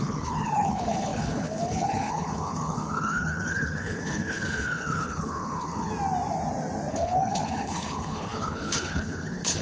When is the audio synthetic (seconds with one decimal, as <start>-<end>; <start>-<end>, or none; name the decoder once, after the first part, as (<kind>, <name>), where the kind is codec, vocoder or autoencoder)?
0.0-5.9 (codec, HILCodec); 6.9-9.6